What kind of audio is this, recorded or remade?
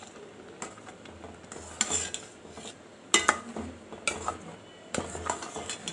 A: recorded